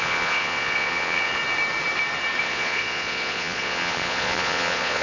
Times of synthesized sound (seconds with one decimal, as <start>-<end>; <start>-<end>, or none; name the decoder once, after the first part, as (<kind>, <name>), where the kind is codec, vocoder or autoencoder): 0.0-1.4 (vocoder, Vocos); 2.4-5.0